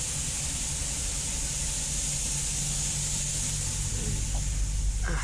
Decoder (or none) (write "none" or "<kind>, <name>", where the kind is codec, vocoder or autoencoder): none